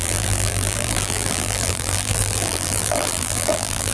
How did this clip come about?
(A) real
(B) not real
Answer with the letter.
B